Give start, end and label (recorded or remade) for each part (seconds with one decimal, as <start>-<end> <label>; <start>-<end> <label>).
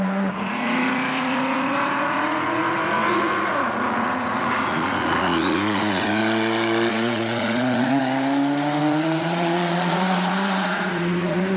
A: 0.0-6.2 remade; 6.2-6.9 recorded; 6.9-8.0 remade; 8.0-8.8 recorded; 8.8-11.6 remade